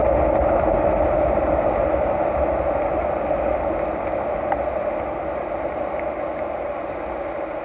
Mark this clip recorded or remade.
recorded